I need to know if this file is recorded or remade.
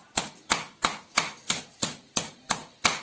recorded